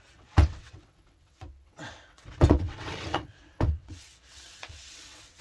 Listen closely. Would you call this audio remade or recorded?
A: remade